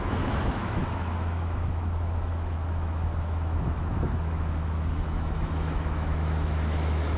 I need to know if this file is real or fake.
fake